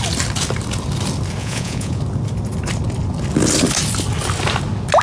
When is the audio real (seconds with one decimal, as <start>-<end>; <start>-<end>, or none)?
0.0-1.4; 2.0-5.0

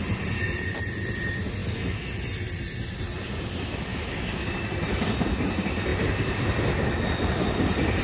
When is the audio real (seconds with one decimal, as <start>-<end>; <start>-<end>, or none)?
0.0-3.9; 4.6-8.0

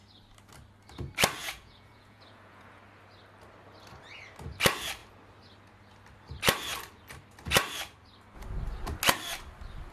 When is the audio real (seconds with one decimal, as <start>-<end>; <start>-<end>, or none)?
0.0-1.4; 2.8-9.9